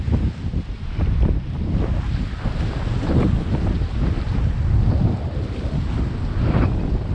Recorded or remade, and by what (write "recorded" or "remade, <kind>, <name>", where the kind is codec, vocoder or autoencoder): recorded